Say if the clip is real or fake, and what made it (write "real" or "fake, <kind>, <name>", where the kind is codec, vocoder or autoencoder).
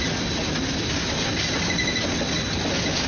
real